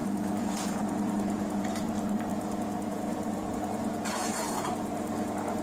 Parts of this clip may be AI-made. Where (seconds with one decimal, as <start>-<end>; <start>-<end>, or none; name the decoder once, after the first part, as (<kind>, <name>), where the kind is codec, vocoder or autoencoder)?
0.0-1.6 (vocoder, Vocos); 2.3-5.6